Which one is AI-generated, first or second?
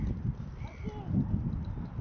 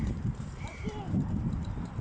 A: second